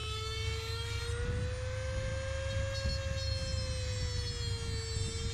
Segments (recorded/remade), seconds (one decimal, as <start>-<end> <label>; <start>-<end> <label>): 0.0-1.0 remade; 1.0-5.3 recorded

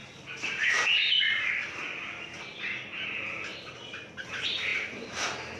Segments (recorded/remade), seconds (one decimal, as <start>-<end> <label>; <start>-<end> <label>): 0.0-3.0 recorded; 3.0-5.6 remade

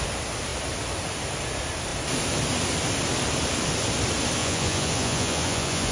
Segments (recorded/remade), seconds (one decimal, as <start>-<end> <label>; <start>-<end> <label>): 0.0-4.4 recorded; 4.4-5.9 remade